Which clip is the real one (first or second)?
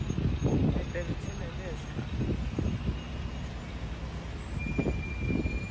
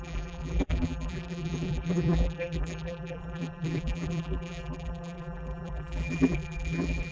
first